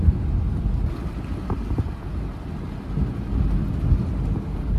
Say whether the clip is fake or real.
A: real